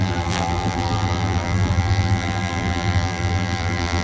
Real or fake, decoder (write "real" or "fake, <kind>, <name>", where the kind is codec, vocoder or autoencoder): fake, vocoder, BigVGAN v2